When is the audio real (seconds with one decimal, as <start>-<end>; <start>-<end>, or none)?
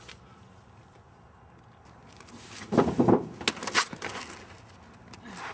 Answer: 0.0-5.5